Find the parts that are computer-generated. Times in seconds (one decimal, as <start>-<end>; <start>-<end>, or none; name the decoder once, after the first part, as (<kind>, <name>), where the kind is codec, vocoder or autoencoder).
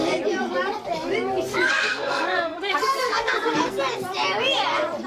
1.5-3.8 (codec, SNAC)